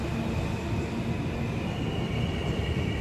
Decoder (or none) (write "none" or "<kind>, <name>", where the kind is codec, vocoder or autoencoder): none